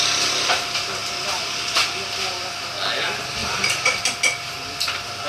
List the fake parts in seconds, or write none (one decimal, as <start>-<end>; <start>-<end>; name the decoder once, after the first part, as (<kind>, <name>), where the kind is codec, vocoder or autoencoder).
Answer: 3.4-4.0 (vocoder, BigVGAN v2)